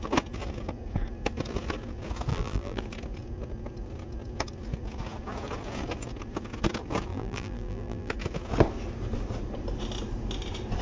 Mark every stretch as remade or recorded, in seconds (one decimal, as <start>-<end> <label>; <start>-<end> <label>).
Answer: 0.0-2.3 recorded; 2.3-2.8 remade; 2.8-7.1 recorded; 7.1-8.1 remade; 8.1-10.8 recorded